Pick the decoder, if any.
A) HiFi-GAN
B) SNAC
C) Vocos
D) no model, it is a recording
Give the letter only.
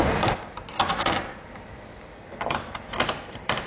D